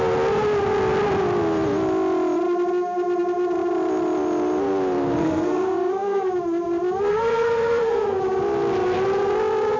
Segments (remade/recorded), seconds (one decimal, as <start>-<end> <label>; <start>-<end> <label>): 0.0-5.2 recorded; 5.2-6.3 remade; 6.3-7.1 recorded; 7.1-8.2 remade; 8.2-9.8 recorded